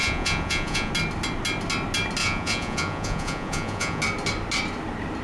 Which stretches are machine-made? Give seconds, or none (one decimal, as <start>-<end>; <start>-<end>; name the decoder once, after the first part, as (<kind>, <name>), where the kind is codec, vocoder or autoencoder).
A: 0.0-0.9 (vocoder, Vocos); 2.2-4.0